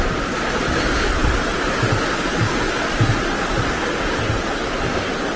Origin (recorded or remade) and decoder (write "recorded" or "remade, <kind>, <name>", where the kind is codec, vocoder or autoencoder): recorded